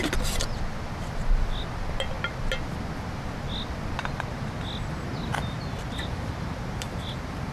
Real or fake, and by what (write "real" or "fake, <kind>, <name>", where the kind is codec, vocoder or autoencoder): real